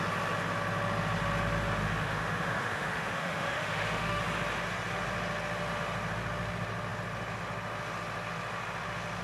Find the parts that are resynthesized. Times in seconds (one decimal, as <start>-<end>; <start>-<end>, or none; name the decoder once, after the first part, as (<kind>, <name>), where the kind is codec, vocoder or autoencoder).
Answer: 1.8-4.2 (autoencoder, DAC-VAE)

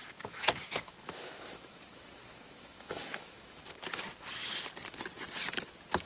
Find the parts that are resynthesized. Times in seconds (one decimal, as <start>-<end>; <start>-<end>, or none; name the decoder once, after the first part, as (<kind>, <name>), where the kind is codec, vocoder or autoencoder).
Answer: 0.0-3.7 (autoencoder, DAC-VAE)

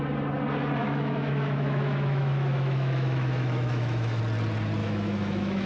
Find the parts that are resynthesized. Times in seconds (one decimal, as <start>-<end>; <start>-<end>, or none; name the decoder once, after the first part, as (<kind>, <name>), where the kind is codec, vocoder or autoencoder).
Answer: 0.8-4.2 (autoencoder, DAC-VAE); 4.8-5.7

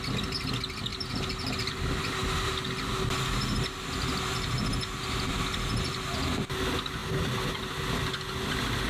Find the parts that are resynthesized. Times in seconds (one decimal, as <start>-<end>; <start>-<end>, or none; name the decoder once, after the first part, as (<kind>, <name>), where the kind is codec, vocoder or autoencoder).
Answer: none

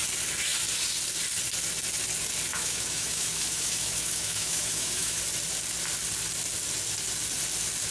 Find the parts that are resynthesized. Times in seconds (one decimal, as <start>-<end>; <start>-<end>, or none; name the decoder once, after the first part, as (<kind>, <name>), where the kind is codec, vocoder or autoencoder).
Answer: 2.5-5.2 (autoencoder, DAC-VAE)

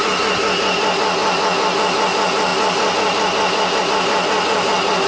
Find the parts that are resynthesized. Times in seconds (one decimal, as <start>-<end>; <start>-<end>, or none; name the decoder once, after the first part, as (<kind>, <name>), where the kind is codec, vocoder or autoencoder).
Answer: none

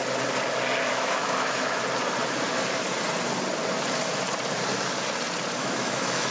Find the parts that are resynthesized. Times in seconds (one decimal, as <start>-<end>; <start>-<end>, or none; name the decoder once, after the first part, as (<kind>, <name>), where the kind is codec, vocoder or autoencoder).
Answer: 0.9-1.8 (autoencoder, DAC-VAE); 5.6-6.3

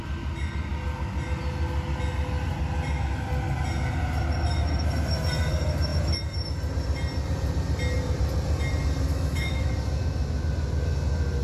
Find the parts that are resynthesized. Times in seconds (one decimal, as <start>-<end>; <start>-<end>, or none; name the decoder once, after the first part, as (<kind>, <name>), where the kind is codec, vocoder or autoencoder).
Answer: 9.1-9.7 (autoencoder, DAC-VAE)